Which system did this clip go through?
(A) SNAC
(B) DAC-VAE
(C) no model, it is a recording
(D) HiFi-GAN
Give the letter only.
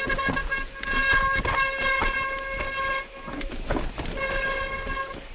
C